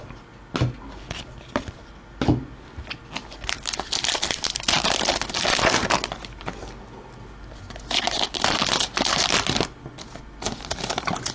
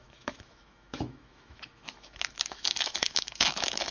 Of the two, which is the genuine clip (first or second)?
first